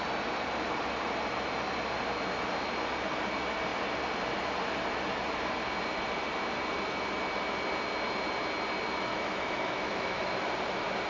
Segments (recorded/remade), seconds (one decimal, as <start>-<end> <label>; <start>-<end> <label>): 0.0-9.1 recorded; 9.1-10.5 remade; 10.5-11.1 recorded